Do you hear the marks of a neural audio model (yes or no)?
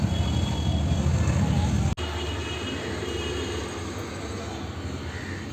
no